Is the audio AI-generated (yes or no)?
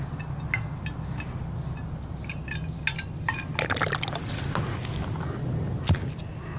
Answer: no